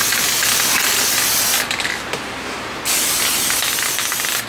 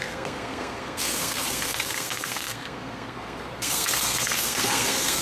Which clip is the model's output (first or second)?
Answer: second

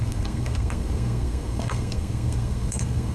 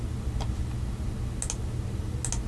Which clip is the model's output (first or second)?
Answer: first